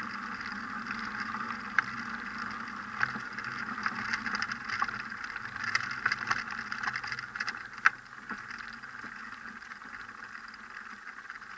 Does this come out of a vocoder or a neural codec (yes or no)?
no